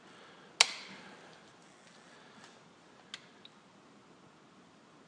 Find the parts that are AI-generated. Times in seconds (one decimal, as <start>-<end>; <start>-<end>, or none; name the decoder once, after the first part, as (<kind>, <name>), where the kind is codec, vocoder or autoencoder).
none